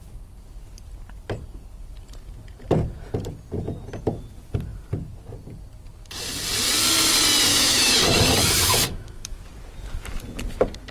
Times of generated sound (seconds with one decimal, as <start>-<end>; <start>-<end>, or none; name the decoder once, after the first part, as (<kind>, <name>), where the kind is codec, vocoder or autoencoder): 7.5-8.0 (autoencoder, DAC-VAE); 8.4-9.4